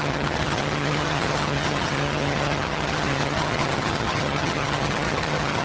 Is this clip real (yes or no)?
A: no